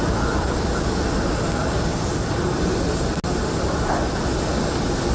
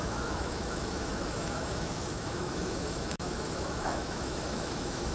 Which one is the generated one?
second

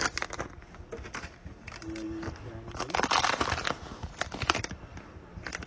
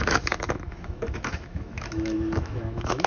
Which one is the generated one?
second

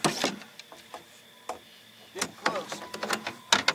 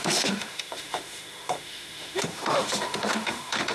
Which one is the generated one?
second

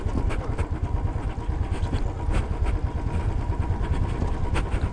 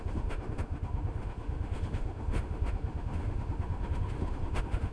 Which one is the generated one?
second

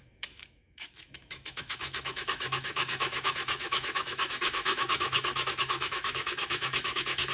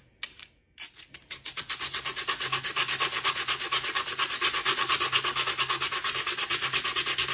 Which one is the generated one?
first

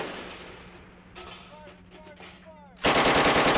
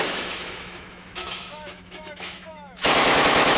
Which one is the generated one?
second